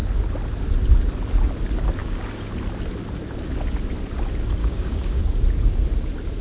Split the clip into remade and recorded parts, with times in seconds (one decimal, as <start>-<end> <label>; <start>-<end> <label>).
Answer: 0.0-2.0 recorded; 2.0-2.5 remade; 2.5-4.6 recorded; 4.6-5.2 remade; 5.2-6.4 recorded